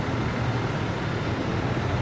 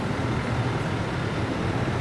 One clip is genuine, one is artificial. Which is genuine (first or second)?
first